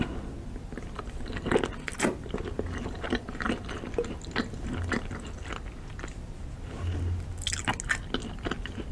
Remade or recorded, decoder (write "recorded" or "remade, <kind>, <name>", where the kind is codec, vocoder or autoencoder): recorded